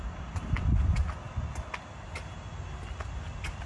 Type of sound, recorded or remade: recorded